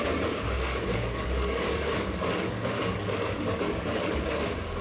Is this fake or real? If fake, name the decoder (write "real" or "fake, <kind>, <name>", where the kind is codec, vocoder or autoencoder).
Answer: fake, codec, DAC